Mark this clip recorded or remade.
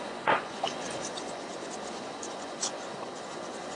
remade